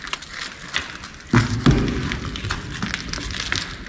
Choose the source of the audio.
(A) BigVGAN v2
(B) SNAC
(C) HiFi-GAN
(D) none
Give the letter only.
D